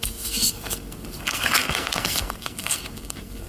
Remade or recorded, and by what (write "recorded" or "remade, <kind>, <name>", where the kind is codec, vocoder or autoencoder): remade, codec, SNAC